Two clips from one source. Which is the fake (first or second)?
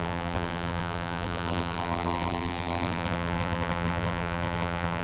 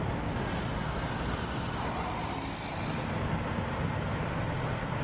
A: first